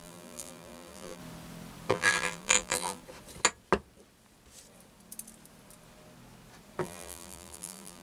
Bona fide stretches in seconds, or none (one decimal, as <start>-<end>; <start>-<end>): 1.2-1.9; 3.0-6.8